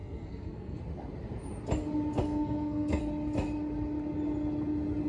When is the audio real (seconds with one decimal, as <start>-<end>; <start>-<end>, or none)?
0.8-2.2; 3.0-5.1